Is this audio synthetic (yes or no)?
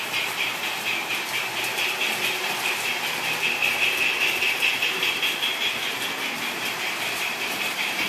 yes